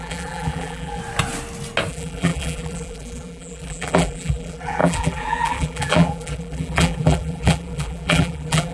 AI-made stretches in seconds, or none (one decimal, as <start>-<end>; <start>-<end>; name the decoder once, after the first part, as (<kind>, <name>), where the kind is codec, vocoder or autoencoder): 0.0-1.0 (vocoder, BigVGAN v2); 1.9-8.7